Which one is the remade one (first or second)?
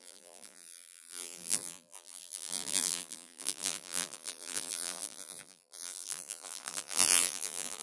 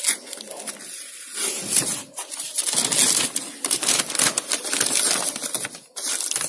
first